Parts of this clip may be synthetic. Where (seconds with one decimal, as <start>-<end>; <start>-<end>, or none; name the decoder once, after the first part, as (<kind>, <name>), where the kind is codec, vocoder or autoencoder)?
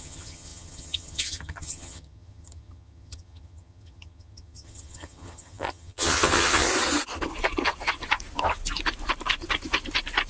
0.0-6.7 (vocoder, HiFi-GAN)